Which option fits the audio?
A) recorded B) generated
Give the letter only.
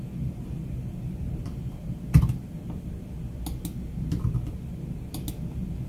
A